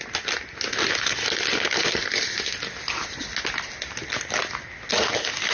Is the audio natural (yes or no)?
yes